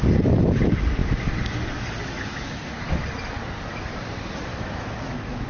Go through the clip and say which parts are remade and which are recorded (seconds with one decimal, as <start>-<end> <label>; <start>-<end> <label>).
0.0-4.5 recorded; 4.5-5.5 remade